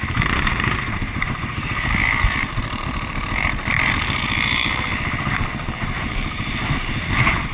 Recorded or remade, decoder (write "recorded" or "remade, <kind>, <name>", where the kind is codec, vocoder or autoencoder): remade, vocoder, BigVGAN v2